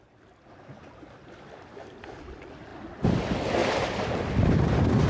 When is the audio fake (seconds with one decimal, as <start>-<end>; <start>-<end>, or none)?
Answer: none